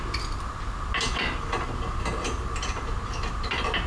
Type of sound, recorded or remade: recorded